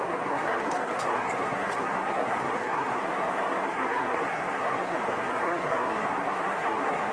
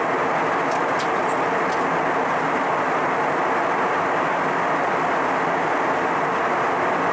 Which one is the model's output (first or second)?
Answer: first